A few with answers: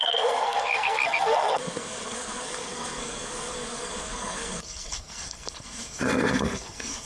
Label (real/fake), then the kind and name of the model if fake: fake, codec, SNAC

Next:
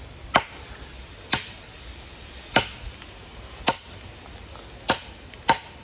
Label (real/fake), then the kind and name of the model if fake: real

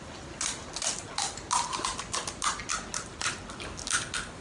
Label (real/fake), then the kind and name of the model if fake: real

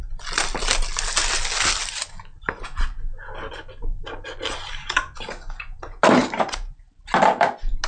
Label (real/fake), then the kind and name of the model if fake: real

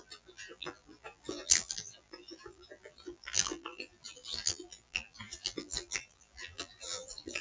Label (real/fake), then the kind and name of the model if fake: fake, vocoder, BigVGAN v2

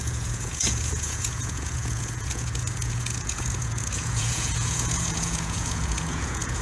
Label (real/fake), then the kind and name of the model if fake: fake, vocoder, Vocos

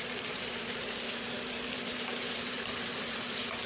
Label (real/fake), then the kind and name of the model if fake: fake, vocoder, BigVGAN v2